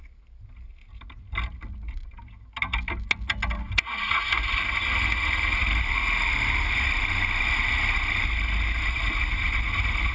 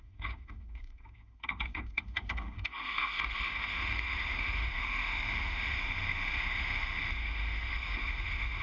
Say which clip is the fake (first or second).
second